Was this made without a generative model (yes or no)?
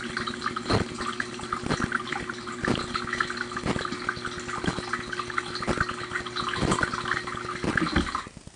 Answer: yes